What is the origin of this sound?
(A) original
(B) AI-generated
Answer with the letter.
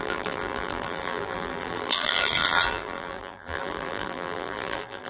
B